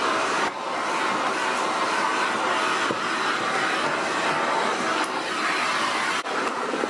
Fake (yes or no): no